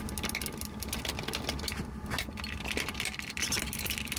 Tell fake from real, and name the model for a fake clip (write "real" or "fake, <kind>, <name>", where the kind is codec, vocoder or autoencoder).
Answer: real